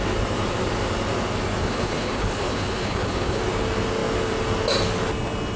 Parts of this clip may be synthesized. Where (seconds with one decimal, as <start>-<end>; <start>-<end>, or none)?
1.6-3.4